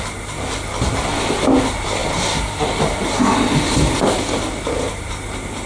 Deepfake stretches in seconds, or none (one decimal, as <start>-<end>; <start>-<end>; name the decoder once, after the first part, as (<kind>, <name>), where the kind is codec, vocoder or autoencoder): none